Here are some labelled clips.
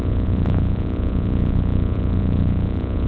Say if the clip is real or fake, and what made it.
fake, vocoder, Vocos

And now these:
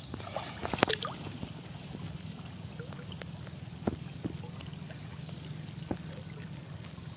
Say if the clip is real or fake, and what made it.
real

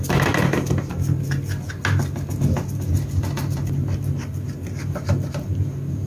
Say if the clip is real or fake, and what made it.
real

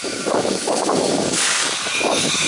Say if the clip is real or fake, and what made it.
fake, codec, DAC